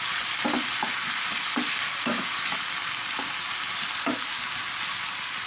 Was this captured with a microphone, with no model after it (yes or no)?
yes